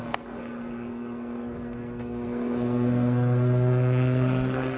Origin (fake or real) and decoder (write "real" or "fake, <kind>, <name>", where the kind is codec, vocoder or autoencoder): fake, codec, SNAC